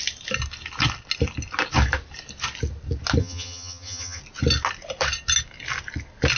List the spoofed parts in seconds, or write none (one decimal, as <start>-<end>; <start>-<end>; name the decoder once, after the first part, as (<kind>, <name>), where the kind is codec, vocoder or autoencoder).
3.2-4.2 (vocoder, HiFi-GAN)